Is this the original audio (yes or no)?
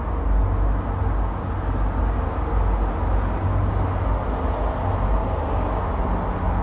yes